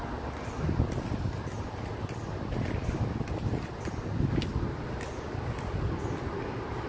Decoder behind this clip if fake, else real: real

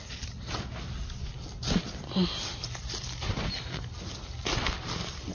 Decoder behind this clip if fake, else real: real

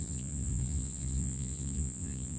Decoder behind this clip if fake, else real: fake, vocoder, Vocos